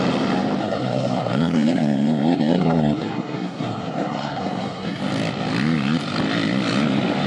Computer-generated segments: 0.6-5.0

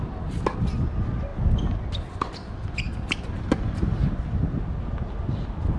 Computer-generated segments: none

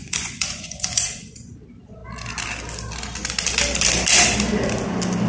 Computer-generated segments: 0.0-1.5